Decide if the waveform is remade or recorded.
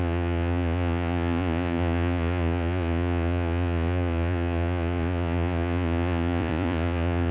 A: remade